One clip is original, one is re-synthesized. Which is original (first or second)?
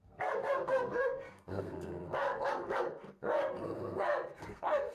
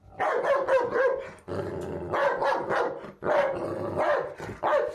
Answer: second